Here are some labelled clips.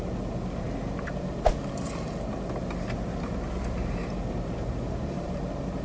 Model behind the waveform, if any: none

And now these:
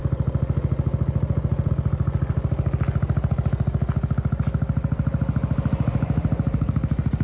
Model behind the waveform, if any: none